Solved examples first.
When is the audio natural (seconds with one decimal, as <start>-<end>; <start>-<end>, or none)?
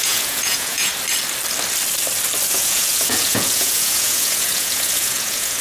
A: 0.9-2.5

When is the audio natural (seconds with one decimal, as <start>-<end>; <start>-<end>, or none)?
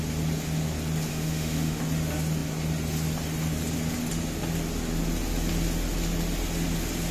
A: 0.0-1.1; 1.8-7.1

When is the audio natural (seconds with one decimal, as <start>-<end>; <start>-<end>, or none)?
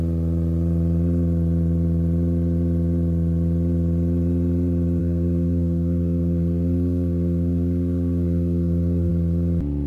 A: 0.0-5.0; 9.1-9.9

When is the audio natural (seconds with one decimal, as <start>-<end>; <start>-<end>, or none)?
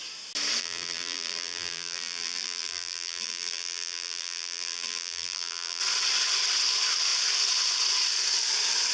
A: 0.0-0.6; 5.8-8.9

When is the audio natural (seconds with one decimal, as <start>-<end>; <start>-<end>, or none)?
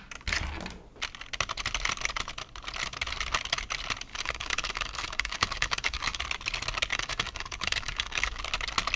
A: 0.0-4.1; 6.2-6.9; 8.4-9.0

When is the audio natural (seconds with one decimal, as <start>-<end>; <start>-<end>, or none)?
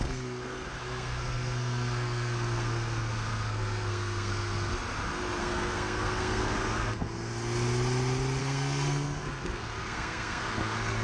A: 4.7-5.4; 7.3-8.4